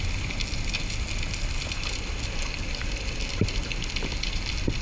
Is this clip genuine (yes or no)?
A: yes